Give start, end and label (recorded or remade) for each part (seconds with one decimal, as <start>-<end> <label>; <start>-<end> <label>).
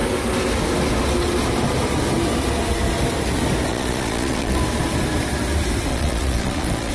0.0-3.7 recorded; 3.7-4.6 remade; 4.6-5.9 recorded; 5.9-6.9 remade